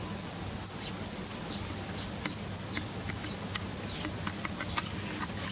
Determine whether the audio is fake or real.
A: real